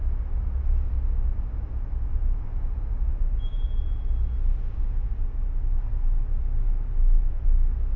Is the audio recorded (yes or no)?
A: yes